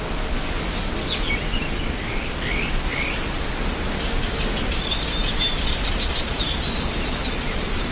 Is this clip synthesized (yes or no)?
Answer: no